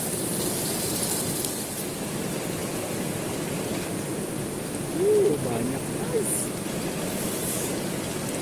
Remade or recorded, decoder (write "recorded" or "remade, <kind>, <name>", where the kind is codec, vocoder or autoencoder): recorded